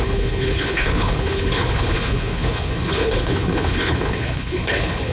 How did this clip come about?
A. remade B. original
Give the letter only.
A